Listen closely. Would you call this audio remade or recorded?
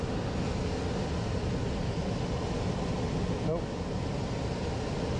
recorded